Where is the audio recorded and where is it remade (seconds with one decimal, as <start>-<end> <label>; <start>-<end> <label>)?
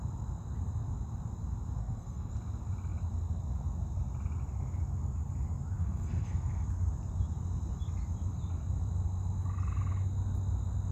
0.0-1.8 recorded; 1.8-2.3 remade; 2.3-5.8 recorded; 5.8-6.7 remade; 6.7-10.9 recorded